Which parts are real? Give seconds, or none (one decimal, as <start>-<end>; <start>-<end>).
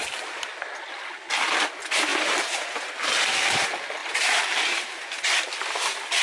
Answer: 0.0-2.1; 2.9-4.0; 5.5-6.2